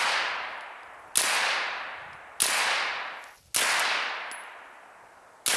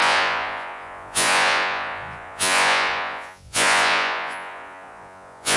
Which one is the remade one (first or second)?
second